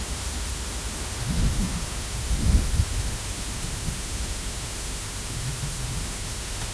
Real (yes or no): no